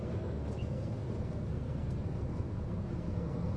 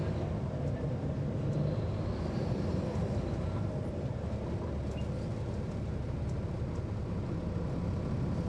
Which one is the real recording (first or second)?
second